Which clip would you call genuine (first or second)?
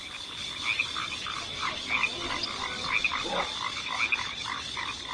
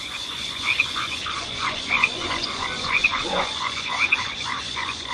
first